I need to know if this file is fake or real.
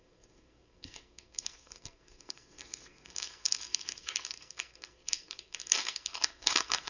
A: fake